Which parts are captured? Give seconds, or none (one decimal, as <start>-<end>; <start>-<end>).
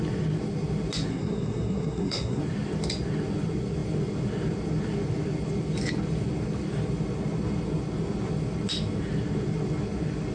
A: 0.0-1.1; 2.4-10.3